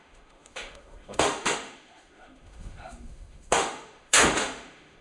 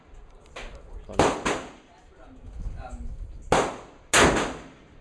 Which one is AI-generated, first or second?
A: first